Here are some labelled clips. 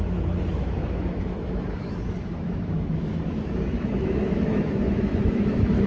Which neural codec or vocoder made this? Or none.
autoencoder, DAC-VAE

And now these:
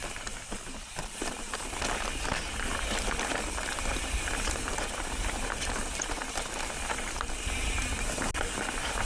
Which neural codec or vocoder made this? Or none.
none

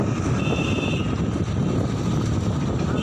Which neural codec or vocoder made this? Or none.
none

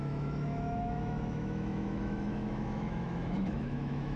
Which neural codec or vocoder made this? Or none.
autoencoder, DAC-VAE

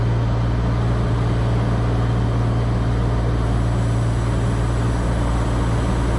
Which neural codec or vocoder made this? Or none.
none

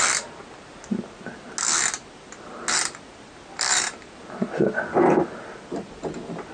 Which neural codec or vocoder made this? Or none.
none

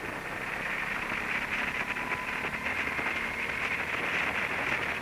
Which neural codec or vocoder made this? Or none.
none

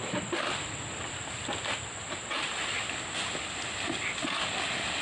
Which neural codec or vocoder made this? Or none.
none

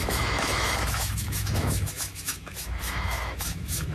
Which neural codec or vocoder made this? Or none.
autoencoder, DAC-VAE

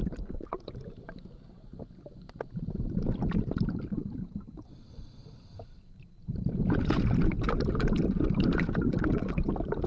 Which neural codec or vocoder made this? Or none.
none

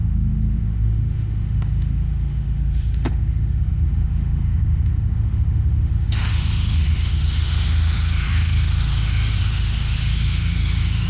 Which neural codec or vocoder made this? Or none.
autoencoder, DAC-VAE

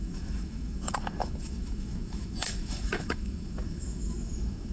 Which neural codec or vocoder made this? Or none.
autoencoder, DAC-VAE